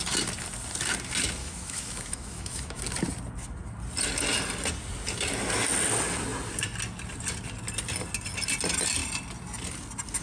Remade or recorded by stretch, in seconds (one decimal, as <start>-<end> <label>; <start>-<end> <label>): 0.0-1.4 recorded; 1.4-2.8 remade; 2.8-10.2 recorded